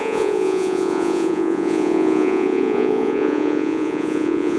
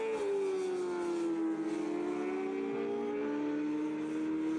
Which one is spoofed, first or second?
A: first